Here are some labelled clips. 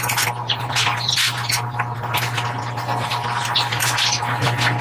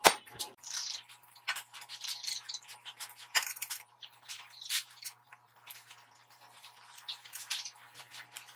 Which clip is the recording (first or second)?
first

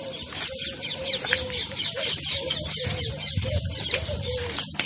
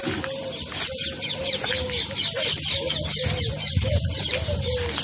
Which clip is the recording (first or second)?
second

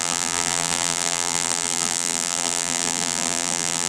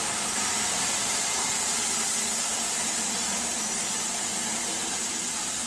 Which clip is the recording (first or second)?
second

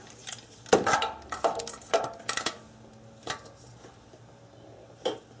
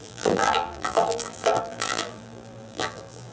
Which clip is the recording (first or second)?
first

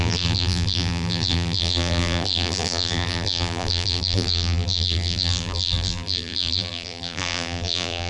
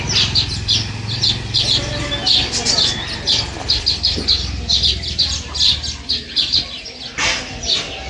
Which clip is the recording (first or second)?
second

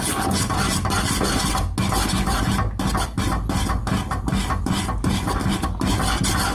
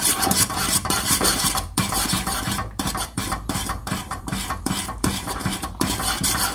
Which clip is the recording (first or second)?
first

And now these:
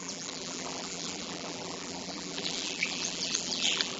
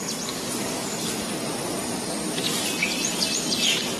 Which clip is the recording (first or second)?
second